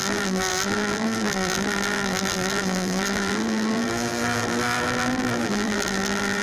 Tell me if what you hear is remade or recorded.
remade